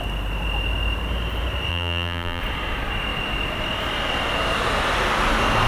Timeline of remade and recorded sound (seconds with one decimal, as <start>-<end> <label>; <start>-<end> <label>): 0.0-1.7 recorded; 1.7-2.4 remade; 2.4-5.7 recorded